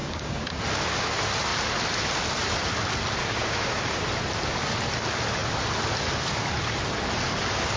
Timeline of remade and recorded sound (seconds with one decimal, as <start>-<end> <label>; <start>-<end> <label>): 0.0-0.6 remade; 0.6-3.2 recorded; 3.2-3.8 remade; 3.8-7.8 recorded